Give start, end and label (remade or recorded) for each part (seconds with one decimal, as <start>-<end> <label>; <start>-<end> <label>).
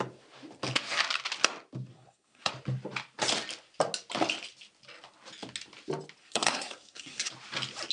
0.0-1.9 recorded; 1.9-2.5 remade; 2.5-6.2 recorded; 6.2-7.3 remade; 7.3-7.9 recorded